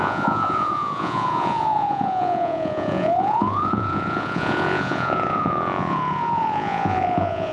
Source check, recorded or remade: remade